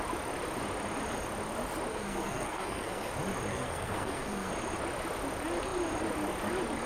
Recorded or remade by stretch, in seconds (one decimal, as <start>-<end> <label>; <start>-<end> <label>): 0.0-1.9 recorded; 1.9-3.1 remade; 3.1-3.5 recorded; 3.5-4.5 remade; 4.5-6.9 recorded